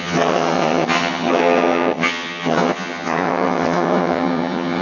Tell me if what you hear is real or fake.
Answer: fake